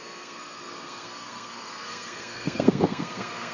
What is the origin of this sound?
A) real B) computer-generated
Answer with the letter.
B